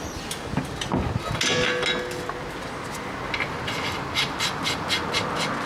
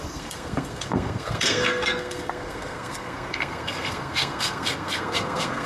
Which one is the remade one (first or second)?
second